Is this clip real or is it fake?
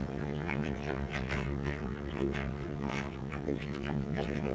fake